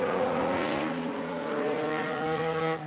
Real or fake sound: fake